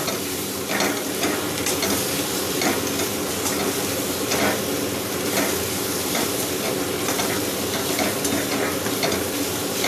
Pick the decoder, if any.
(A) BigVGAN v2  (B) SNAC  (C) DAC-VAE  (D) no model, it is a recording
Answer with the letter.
A